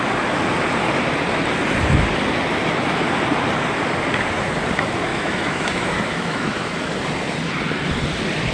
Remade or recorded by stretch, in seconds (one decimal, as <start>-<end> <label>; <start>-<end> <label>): 0.0-5.1 recorded; 5.1-6.9 remade; 6.9-8.5 recorded